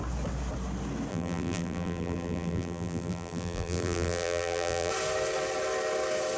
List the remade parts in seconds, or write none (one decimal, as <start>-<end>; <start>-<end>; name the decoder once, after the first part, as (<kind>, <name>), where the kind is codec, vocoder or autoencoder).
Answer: 1.1-4.9 (vocoder, BigVGAN v2)